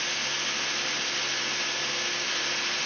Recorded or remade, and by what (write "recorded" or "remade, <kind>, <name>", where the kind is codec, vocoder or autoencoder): recorded